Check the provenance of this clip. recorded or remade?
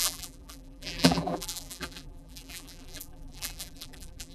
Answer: remade